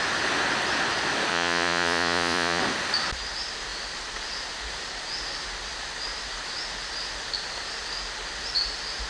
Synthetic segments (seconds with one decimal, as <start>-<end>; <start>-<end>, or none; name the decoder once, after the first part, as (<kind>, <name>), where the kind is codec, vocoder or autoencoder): 1.3-2.6 (vocoder, Vocos)